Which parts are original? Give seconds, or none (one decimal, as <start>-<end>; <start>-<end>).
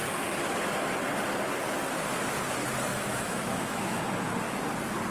0.0-2.9; 4.0-5.1